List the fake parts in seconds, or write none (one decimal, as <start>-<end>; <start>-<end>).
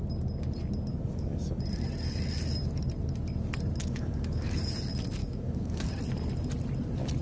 0.9-1.6; 3.8-4.6; 5.2-5.9